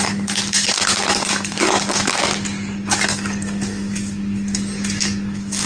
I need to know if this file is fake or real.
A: fake